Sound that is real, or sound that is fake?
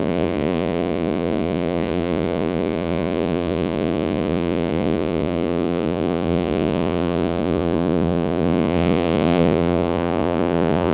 fake